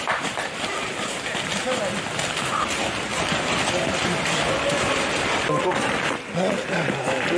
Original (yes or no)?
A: yes